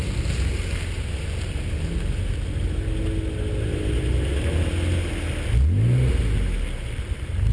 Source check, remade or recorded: recorded